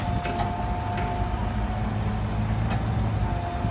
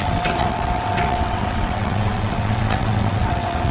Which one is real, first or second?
first